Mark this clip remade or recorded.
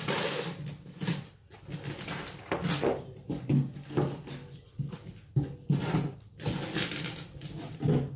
recorded